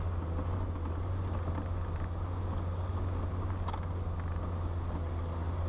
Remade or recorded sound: recorded